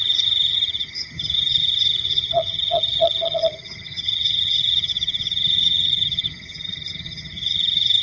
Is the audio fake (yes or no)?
yes